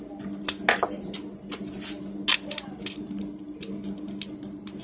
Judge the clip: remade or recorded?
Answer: recorded